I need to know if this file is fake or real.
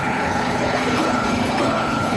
fake